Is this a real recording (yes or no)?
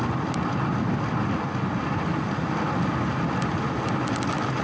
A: yes